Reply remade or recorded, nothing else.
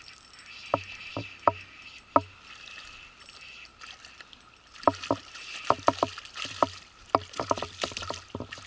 recorded